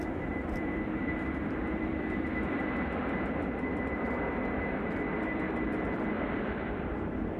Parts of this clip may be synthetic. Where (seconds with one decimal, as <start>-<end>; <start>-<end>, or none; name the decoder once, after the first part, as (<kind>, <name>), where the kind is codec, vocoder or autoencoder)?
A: 0.0-7.4 (vocoder, BigVGAN v2)